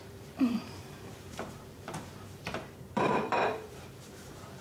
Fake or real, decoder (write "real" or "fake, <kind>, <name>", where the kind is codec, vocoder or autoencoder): fake, vocoder, BigVGAN v2